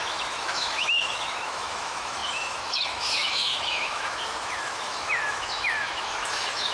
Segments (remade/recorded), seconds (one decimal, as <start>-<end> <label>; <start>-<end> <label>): 0.0-6.7 remade